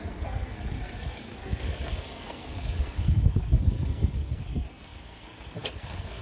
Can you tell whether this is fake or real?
fake